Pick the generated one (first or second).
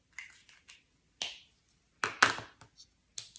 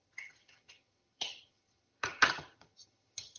second